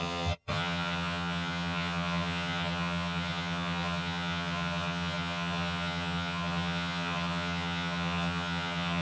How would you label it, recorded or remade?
remade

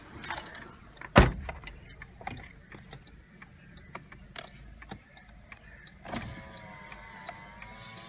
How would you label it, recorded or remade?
recorded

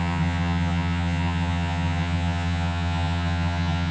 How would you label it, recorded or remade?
remade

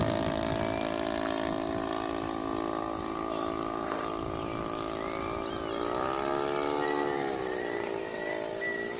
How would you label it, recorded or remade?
recorded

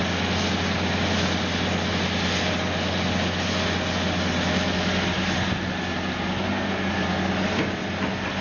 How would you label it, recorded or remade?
recorded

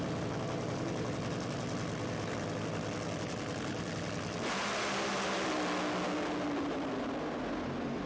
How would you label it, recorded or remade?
recorded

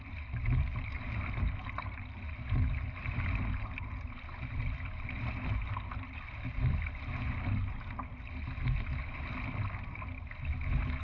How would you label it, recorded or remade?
recorded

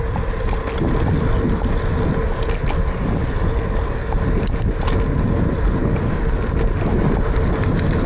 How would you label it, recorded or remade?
recorded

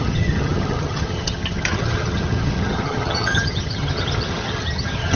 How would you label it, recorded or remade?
remade